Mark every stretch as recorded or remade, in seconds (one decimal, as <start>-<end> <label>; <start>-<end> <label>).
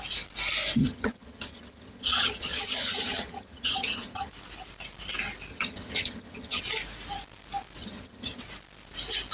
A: 0.0-0.8 recorded; 0.8-4.3 remade; 4.3-5.5 recorded; 5.5-6.6 remade; 6.6-7.8 recorded; 7.8-8.4 remade; 8.4-9.3 recorded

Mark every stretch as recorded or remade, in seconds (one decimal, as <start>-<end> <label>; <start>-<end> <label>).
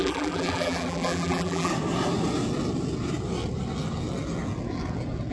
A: 0.0-1.7 remade; 1.7-5.3 recorded